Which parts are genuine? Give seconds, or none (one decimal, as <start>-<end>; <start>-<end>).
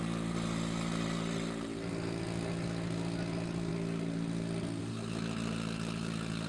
0.0-6.5